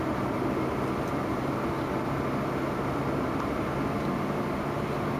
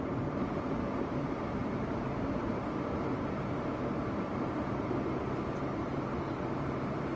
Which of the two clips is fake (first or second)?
second